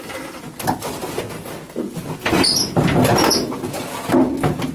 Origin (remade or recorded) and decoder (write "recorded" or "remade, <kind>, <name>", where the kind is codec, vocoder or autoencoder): recorded